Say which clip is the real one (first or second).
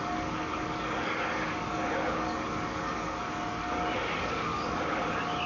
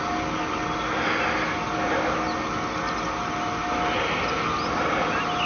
second